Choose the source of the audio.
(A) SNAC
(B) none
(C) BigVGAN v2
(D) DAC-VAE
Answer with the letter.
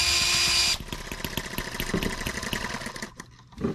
B